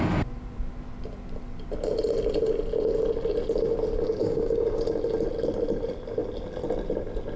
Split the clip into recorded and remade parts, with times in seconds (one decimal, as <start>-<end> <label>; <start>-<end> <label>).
0.0-4.2 recorded; 4.2-4.8 remade; 4.8-7.4 recorded